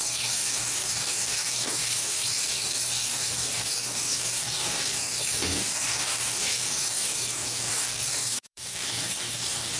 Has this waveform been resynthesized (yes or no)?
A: yes